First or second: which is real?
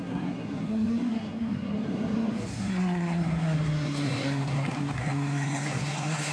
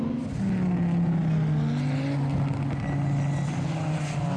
second